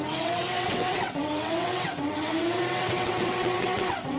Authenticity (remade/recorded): remade